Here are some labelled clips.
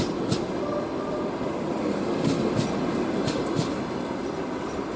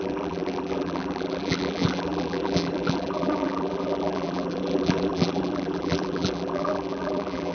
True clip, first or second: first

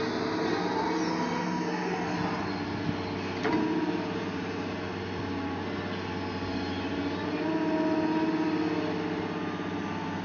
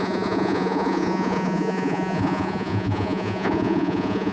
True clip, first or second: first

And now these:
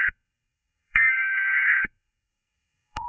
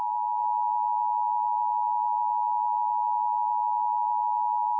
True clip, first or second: second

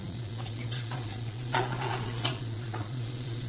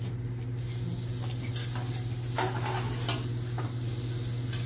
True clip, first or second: second